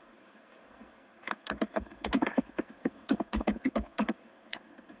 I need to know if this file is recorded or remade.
remade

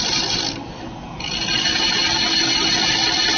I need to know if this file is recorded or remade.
recorded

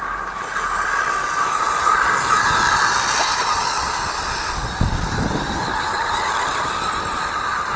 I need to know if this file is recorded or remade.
recorded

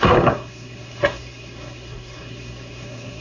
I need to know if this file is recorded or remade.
remade